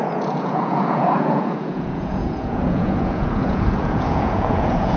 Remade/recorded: remade